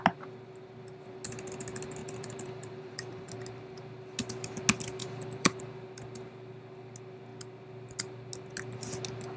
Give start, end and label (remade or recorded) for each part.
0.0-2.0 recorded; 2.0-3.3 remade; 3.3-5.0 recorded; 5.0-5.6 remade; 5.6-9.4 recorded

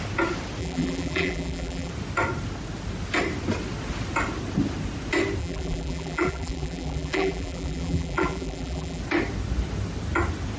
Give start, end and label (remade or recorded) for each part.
0.0-0.6 recorded; 0.6-1.9 remade; 1.9-5.4 recorded; 5.4-9.0 remade; 9.0-10.6 recorded